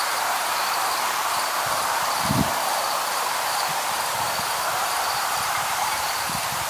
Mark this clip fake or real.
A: fake